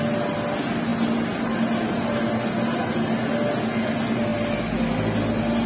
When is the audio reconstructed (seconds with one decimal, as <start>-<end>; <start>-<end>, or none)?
none